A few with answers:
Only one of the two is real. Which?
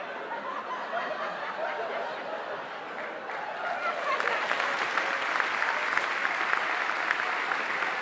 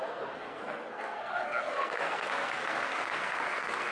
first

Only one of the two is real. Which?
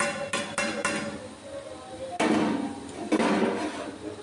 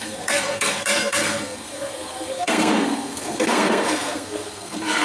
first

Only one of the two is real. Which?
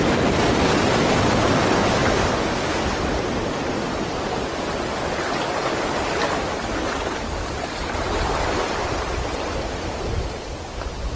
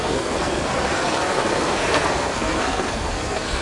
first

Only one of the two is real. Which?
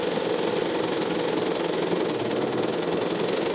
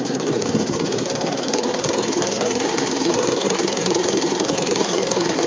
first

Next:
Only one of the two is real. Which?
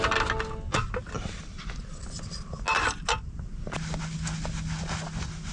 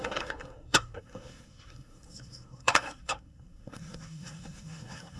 first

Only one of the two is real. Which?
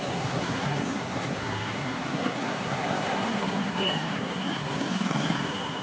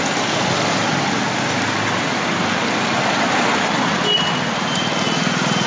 second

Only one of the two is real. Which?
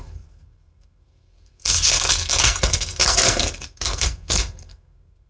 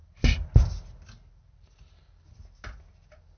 second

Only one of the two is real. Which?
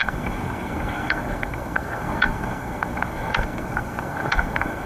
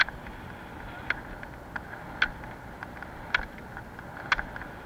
second